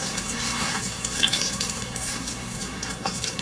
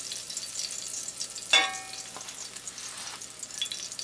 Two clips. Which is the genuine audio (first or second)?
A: second